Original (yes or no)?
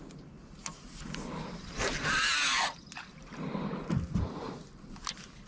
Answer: yes